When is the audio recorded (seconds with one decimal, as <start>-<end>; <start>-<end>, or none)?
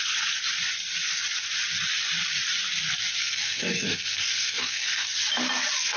0.0-3.2; 5.1-6.0